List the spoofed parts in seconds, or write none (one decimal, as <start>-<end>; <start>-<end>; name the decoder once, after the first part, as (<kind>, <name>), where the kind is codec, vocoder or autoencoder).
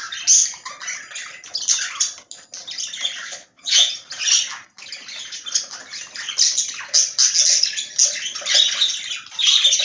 3.2-3.9 (vocoder, Vocos)